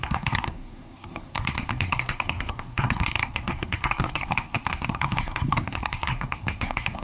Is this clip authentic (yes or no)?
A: no